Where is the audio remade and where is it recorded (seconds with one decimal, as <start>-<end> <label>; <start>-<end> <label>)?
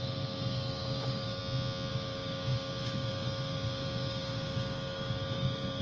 0.0-1.4 remade; 1.4-1.9 recorded; 1.9-5.8 remade